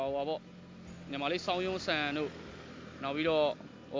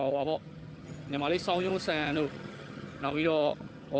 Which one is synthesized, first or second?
second